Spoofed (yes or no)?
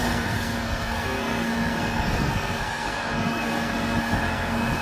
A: yes